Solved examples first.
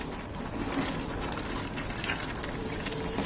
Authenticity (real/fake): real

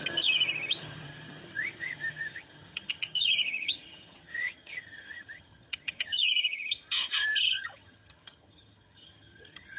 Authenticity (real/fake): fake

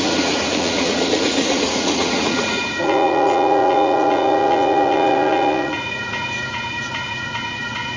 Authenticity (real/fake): fake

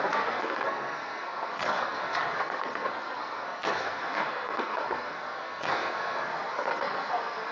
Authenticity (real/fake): fake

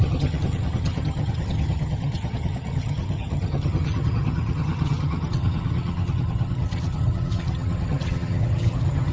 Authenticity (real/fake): fake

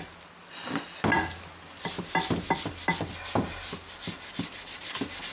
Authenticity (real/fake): real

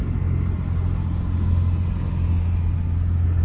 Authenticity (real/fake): real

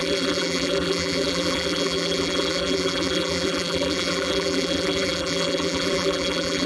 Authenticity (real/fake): fake